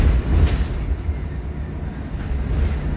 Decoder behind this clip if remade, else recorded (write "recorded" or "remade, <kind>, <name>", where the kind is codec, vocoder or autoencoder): recorded